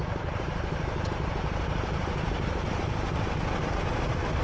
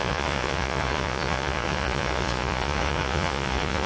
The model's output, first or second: second